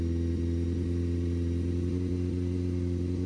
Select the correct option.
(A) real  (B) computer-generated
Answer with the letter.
A